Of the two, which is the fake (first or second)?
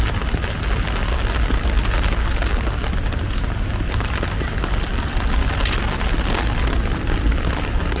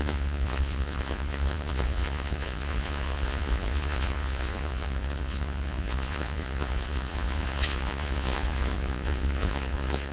second